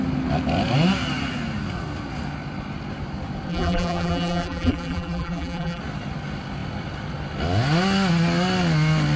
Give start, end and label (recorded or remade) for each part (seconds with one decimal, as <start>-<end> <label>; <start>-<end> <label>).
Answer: 0.0-3.5 recorded; 3.5-5.8 remade; 5.8-9.2 recorded